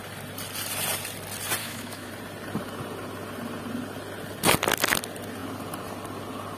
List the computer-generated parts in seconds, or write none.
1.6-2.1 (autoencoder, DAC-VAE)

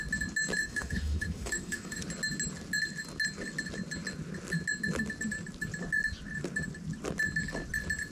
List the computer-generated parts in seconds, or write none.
0.6-2.0 (autoencoder, DAC-VAE)

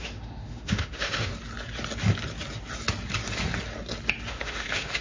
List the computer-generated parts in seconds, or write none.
0.0-1.3 (autoencoder, DAC-VAE); 4.3-5.0